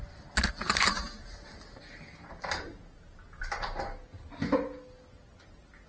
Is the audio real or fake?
real